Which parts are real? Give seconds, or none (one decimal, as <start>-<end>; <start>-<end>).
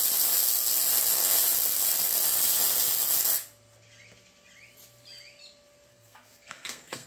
0.0-5.9